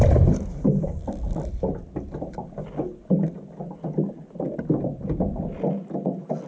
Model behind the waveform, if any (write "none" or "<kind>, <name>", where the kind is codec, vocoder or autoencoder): none